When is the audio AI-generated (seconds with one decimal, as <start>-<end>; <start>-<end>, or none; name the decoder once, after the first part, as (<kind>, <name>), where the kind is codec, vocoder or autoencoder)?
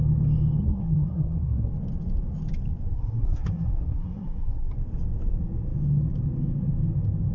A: 0.6-1.7 (codec, SNAC); 2.9-4.7